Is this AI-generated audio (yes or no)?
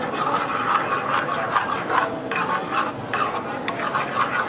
no